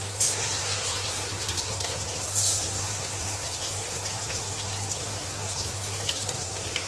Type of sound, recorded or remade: remade